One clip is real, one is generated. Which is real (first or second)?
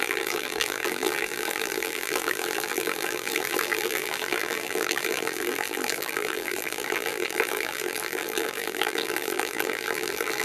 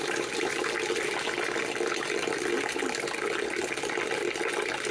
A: second